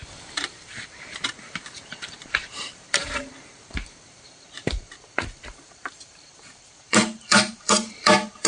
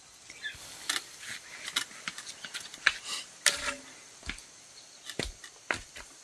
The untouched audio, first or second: second